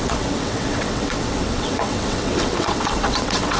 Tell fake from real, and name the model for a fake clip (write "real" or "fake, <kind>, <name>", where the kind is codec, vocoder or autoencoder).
fake, vocoder, WaveNeXt